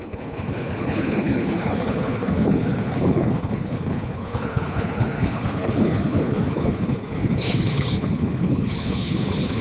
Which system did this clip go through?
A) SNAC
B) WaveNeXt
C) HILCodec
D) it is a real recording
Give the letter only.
C